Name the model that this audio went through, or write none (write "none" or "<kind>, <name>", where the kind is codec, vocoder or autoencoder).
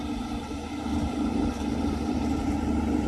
vocoder, BigVGAN v2